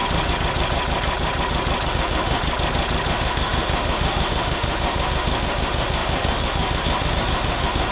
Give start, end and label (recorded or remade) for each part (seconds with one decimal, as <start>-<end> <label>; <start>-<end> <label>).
0.0-1.9 recorded; 1.9-2.4 remade; 2.4-3.1 recorded; 3.1-7.9 remade